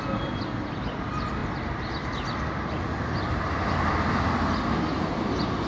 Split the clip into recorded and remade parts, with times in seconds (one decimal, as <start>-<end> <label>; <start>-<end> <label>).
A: 0.0-5.7 recorded